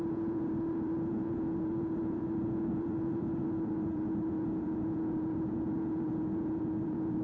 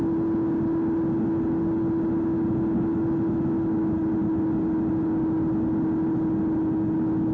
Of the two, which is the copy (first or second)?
first